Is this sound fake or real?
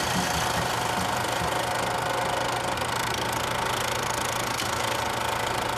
real